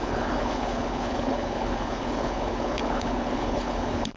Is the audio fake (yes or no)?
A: yes